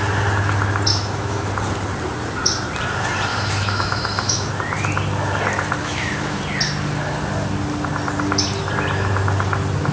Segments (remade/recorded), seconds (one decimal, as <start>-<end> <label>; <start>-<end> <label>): 0.0-0.9 recorded; 0.9-1.5 remade; 1.5-3.3 recorded; 3.3-4.5 remade; 4.5-5.8 recorded; 5.8-6.4 remade; 6.4-9.9 recorded